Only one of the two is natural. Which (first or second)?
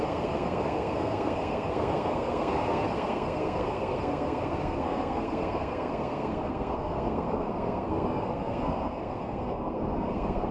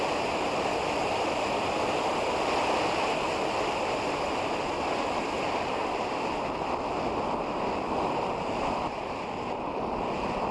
second